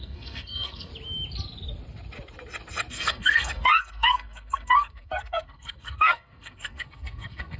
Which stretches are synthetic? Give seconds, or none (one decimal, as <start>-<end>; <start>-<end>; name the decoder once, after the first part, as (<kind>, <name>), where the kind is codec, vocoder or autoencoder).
0.0-0.9 (codec, SNAC); 2.9-7.6